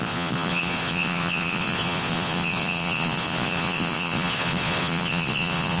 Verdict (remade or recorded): remade